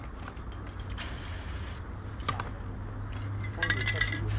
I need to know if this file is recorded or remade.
recorded